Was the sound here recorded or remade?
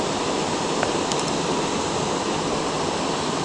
recorded